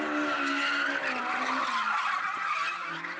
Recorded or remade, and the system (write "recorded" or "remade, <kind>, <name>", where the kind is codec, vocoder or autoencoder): recorded